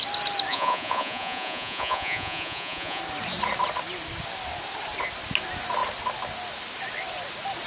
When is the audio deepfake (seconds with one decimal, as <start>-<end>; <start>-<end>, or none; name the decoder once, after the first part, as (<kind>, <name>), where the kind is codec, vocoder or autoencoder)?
0.5-3.0 (vocoder, Vocos)

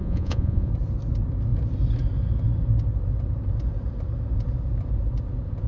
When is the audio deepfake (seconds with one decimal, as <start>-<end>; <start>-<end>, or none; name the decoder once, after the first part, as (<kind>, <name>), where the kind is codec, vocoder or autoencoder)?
0.0-0.7 (vocoder, Vocos)

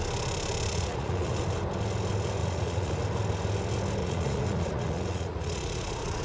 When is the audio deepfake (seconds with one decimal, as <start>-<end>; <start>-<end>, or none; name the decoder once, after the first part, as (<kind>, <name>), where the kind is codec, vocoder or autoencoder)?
0.7-1.4 (vocoder, Vocos); 2.4-3.0; 4.0-6.2

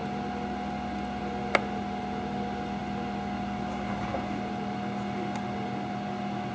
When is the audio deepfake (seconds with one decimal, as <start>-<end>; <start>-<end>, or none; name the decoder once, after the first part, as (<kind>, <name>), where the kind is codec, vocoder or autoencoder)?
none

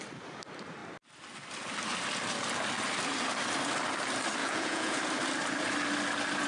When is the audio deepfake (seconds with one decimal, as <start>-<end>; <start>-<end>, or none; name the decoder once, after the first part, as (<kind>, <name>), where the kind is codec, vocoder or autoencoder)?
4.4-5.0 (vocoder, Vocos)

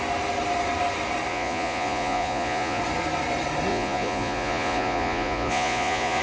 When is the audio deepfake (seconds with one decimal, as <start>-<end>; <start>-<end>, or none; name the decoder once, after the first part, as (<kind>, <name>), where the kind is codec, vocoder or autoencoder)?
1.3-2.8 (vocoder, Vocos); 3.7-6.2

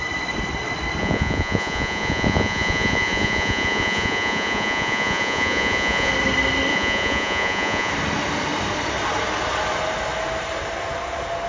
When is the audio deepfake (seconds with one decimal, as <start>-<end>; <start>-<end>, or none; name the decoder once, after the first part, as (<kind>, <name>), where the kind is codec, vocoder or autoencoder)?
1.0-6.1 (vocoder, Vocos); 6.7-7.9

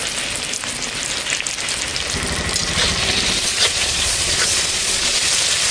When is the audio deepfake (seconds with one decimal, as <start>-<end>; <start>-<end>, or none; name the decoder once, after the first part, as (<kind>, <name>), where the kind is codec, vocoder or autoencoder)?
3.4-5.3 (vocoder, Vocos)